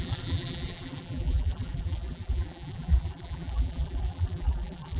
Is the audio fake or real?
fake